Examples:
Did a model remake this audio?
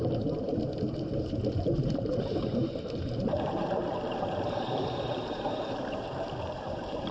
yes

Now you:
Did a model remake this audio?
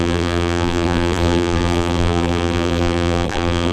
yes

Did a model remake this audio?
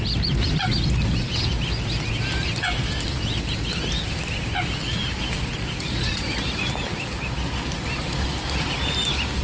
no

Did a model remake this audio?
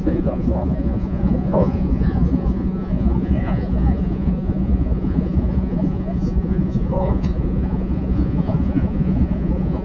yes